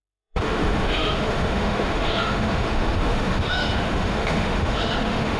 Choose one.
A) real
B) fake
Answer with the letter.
B